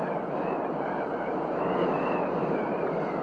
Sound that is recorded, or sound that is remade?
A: recorded